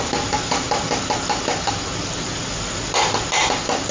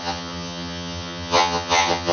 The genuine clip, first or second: first